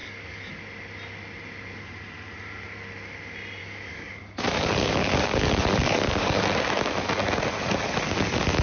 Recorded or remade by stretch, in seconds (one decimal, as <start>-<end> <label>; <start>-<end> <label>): 0.0-0.5 remade; 0.5-3.6 recorded; 3.6-6.4 remade; 6.4-8.6 recorded